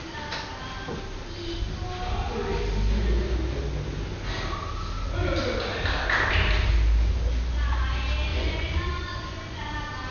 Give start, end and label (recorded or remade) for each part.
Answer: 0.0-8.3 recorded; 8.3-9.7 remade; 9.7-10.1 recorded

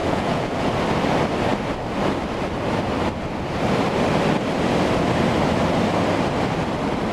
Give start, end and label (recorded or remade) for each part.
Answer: 0.0-0.7 remade; 0.7-7.1 recorded

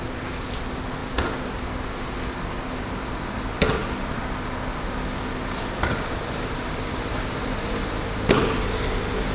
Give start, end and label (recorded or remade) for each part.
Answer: 0.0-9.3 recorded

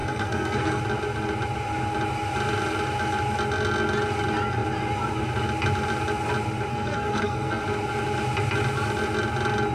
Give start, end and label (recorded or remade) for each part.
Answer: 0.0-0.8 remade; 0.8-6.7 recorded; 6.7-7.6 remade; 7.6-9.7 recorded

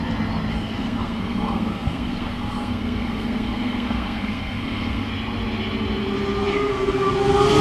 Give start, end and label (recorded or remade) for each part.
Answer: 0.0-0.5 recorded; 0.5-5.1 remade; 5.1-6.5 recorded; 6.5-7.1 remade; 7.1-7.6 recorded

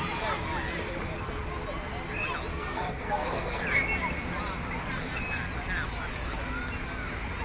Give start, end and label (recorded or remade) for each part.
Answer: 0.0-2.5 recorded; 2.5-3.6 remade; 3.6-7.4 recorded

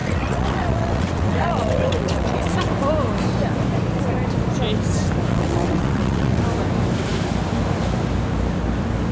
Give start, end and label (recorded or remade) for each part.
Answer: 0.0-2.6 remade; 2.6-5.3 recorded; 5.3-6.4 remade; 6.4-9.1 recorded

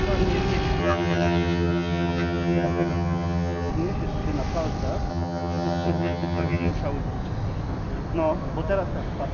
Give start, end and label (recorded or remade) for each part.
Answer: 0.0-0.8 recorded; 0.8-3.7 remade; 3.7-5.1 recorded; 5.1-6.7 remade; 6.7-9.3 recorded